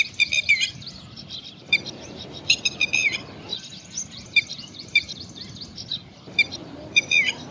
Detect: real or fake fake